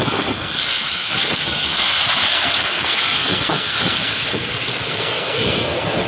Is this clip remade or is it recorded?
remade